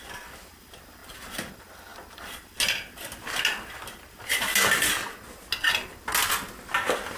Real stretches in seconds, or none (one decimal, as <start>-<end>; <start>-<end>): 0.0-7.2